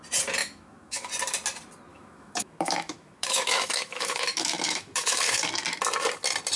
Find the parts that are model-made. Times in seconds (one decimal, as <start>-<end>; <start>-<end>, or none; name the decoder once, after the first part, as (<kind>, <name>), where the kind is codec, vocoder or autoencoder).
0.4-1.1 (autoencoder, DAC-VAE); 1.9-5.4